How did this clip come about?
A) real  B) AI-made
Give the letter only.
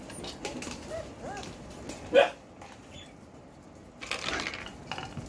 A